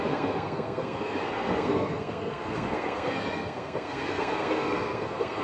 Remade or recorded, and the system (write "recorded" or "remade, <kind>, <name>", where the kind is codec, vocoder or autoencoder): remade, codec, SNAC